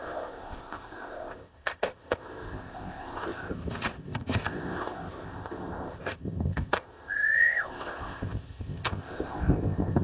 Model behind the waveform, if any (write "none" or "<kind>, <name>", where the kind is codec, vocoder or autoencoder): codec, ZipCodec